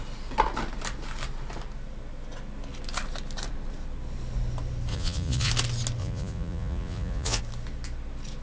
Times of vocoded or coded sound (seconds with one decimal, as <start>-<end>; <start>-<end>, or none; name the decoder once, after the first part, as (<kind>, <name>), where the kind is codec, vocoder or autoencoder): 4.9-5.5 (vocoder, Vocos); 6.0-7.4